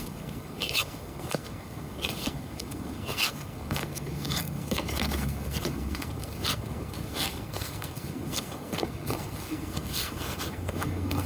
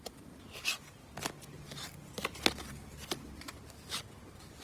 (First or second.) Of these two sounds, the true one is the second